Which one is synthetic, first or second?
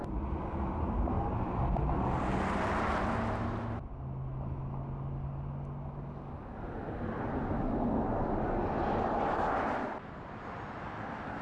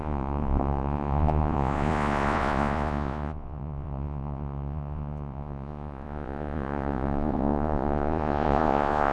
second